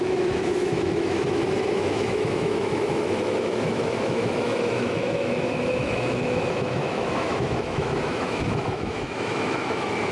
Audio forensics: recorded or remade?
remade